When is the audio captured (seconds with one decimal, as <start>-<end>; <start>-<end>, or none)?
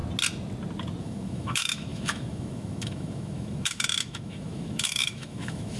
0.0-1.0